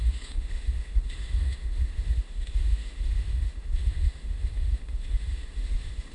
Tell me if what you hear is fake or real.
fake